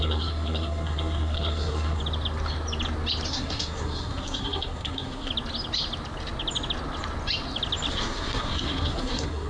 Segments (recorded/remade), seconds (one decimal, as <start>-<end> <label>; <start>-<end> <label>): 0.0-2.0 remade; 2.0-3.3 recorded; 3.3-5.3 remade; 5.3-7.9 recorded; 7.9-9.5 remade